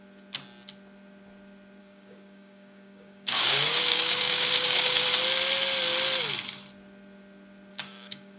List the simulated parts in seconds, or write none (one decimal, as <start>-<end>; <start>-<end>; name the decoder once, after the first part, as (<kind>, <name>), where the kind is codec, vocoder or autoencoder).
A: 1.8-5.0 (codec, DAC); 7.7-8.4